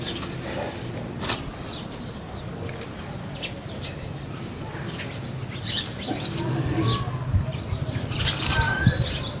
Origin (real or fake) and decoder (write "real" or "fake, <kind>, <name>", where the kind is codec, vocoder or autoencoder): fake, vocoder, BigVGAN v2